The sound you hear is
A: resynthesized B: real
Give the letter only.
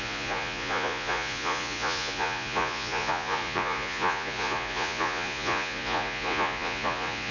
A